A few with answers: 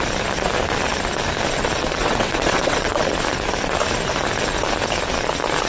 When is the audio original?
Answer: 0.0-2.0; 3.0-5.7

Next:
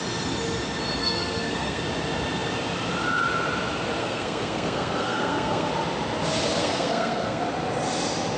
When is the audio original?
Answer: 0.0-1.0; 1.8-4.0; 5.7-6.6; 7.4-8.4

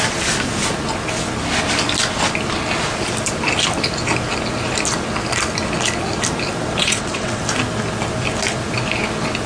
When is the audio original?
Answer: 0.0-6.8; 7.4-9.5